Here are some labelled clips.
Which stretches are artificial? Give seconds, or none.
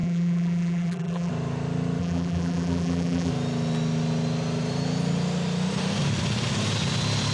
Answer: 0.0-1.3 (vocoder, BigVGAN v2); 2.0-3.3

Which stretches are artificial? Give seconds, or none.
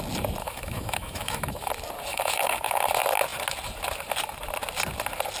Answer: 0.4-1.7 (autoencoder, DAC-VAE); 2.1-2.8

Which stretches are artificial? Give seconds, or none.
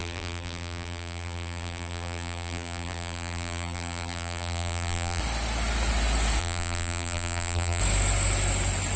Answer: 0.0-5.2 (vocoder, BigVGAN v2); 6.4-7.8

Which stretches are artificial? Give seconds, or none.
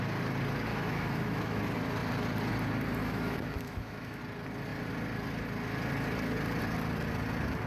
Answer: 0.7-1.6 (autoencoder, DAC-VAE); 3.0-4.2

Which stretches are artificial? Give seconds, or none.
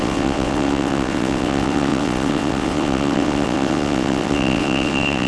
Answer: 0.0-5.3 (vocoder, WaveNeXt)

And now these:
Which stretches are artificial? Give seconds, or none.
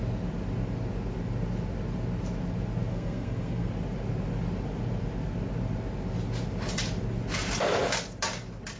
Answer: 2.9-3.7 (codec, SNAC)